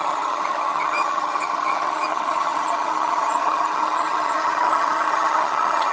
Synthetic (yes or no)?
yes